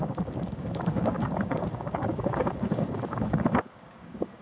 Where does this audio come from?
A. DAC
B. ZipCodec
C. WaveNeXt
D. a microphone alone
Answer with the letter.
A